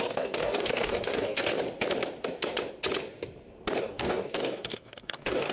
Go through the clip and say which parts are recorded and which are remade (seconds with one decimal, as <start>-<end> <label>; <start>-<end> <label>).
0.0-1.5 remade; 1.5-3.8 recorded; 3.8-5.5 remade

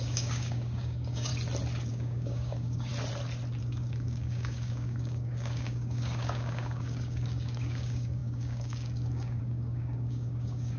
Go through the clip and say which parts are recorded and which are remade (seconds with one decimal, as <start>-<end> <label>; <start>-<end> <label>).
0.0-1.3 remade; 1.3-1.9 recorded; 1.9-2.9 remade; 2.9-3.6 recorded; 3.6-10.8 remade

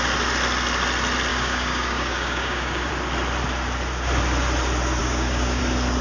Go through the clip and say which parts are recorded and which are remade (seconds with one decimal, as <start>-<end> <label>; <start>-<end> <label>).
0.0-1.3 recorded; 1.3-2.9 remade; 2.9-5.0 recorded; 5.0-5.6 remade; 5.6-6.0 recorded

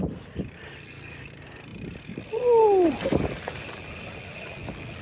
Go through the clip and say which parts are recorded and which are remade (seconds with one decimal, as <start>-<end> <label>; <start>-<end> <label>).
0.0-5.0 recorded

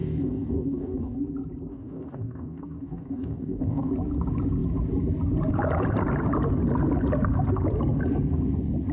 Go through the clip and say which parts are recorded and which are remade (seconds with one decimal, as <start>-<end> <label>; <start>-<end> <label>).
0.0-1.2 remade; 1.2-1.7 recorded; 1.7-3.9 remade; 3.9-8.9 recorded

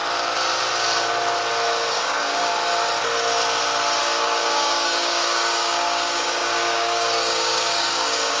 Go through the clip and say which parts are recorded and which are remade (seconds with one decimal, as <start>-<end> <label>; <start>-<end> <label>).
0.0-1.9 recorded; 1.9-2.5 remade; 2.5-4.0 recorded; 4.0-8.4 remade

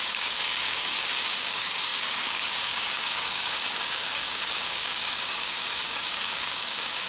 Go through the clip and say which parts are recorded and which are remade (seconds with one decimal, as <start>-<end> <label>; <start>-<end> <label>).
0.0-7.1 remade